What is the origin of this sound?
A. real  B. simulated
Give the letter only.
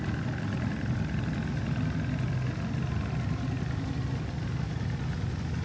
A